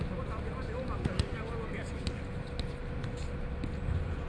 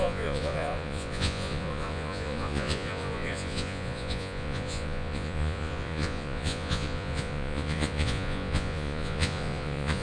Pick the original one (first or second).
first